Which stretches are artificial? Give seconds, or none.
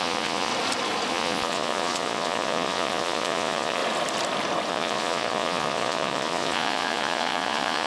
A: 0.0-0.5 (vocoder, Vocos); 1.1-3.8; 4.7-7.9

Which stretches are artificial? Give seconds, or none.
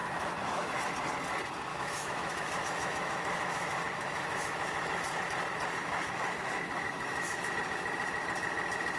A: 0.0-0.9 (autoencoder, DAC-VAE); 1.7-5.2; 5.8-7.5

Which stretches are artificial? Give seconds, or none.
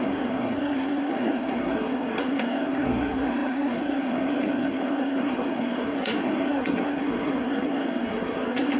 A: 0.0-8.8 (codec, SNAC)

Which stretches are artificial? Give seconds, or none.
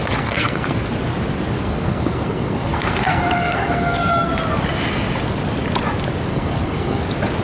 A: 0.0-0.9 (codec, SNAC); 1.6-4.3; 6.3-7.0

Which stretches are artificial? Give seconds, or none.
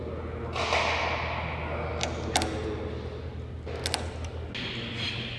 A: none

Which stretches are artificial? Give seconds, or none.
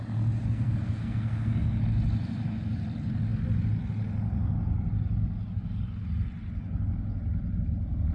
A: 0.4-1.8 (codec, SNAC)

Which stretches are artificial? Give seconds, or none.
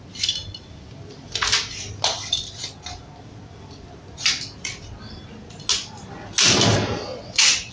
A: 7.1-7.7 (vocoder, WaveNeXt)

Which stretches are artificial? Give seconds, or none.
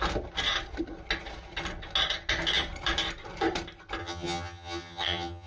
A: 4.0-5.5 (vocoder, HiFi-GAN)